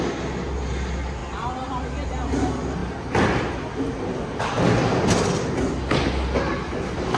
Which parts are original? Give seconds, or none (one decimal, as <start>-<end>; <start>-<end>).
0.0-7.2